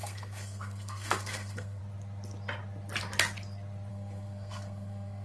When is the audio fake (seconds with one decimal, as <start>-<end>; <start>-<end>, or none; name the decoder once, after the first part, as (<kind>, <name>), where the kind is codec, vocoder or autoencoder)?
0.0-1.8 (codec, SNAC); 3.9-5.2